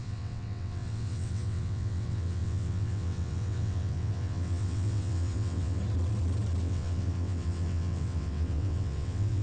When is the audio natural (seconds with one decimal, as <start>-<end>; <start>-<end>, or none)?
5.8-6.6